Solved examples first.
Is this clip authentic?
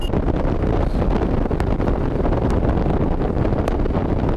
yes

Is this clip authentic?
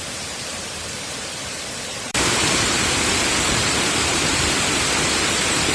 no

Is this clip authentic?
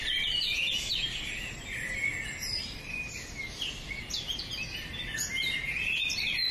yes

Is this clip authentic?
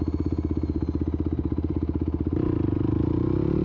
yes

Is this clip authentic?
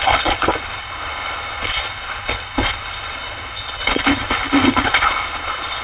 no